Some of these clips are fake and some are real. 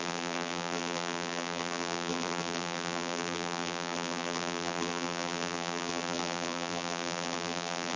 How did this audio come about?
fake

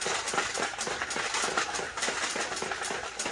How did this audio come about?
fake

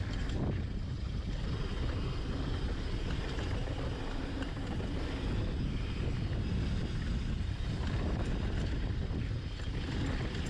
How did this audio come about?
real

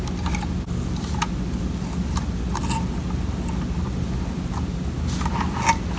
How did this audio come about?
real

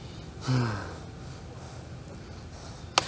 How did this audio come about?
real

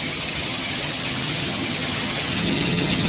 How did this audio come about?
fake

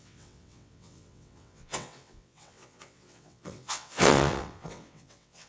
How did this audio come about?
fake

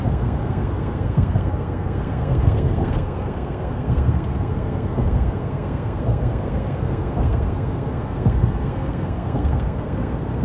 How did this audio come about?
fake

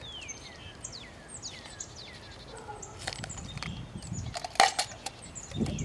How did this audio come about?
real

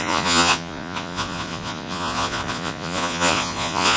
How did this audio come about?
fake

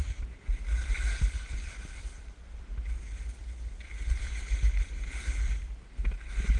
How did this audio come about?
real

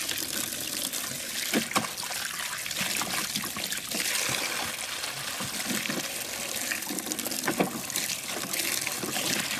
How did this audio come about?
real